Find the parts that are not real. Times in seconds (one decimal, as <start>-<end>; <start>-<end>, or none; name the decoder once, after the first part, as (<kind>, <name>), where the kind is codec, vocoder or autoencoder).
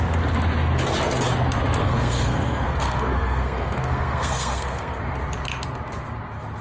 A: 1.8-5.0 (codec, SNAC)